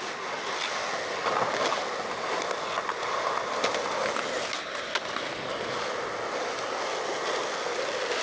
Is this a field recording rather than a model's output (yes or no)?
yes